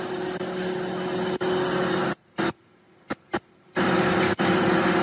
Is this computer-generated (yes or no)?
no